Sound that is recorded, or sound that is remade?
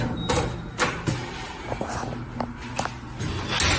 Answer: recorded